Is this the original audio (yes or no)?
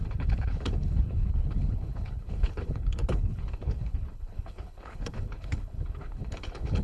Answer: no